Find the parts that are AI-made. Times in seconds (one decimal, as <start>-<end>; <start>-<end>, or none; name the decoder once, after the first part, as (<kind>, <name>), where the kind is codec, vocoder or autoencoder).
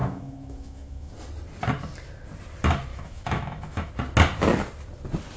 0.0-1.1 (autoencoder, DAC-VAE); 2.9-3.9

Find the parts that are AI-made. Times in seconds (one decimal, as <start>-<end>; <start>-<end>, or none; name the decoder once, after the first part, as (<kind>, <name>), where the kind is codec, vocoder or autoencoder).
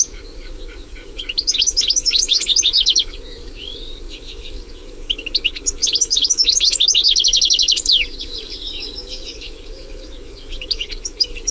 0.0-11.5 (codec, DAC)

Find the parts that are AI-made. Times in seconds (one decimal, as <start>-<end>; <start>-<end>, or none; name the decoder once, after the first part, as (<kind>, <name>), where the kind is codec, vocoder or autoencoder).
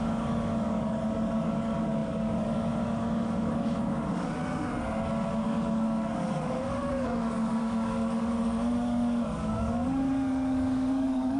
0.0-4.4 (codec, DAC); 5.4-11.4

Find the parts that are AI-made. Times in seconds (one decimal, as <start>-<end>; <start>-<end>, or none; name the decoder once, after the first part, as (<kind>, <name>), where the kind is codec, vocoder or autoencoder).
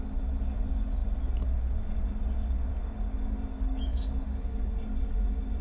3.5-4.2 (codec, DAC)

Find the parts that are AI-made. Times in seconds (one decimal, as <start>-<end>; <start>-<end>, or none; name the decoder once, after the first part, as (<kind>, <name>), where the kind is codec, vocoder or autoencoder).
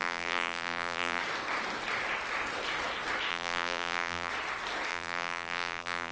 0.0-1.2 (vocoder, BigVGAN v2); 3.3-4.3; 4.9-6.1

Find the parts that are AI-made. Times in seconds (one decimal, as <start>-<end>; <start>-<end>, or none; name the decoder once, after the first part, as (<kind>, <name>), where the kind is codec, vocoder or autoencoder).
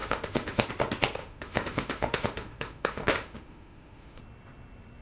0.0-0.7 (autoencoder, DAC-VAE); 1.2-4.2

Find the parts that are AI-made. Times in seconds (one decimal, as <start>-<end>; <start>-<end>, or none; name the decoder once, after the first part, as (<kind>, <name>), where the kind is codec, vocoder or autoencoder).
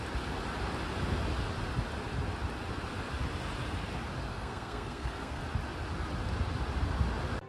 4.3-5.4 (codec, SNAC)